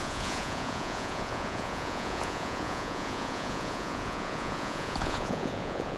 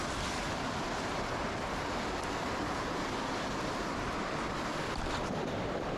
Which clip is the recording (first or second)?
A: second